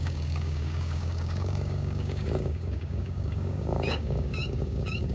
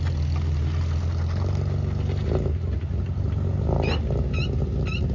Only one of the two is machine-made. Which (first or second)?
first